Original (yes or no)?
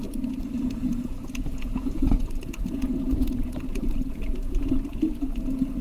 no